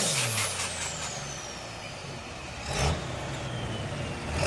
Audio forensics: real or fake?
real